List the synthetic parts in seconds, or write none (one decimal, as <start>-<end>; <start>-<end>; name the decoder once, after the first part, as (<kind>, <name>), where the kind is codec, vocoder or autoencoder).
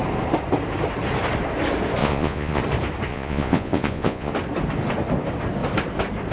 2.0-2.6 (vocoder, Vocos); 3.1-4.3